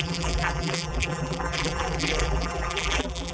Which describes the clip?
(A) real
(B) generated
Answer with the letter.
B